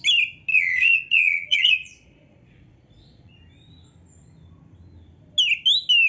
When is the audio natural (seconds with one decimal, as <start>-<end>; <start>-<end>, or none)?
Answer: 0.0-0.5; 3.3-6.1